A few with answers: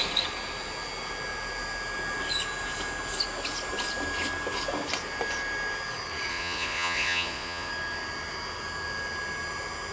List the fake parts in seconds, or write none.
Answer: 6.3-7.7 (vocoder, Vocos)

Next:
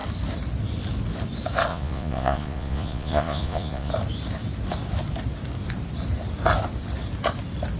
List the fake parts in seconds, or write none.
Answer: 1.7-3.9 (vocoder, Vocos)

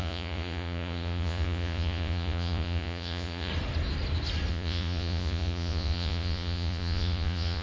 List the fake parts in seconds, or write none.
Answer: 0.0-3.5 (vocoder, Vocos); 4.5-7.6